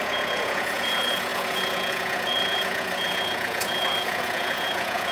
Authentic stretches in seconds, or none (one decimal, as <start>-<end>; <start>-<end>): none